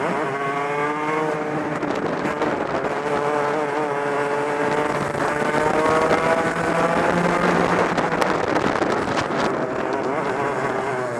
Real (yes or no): yes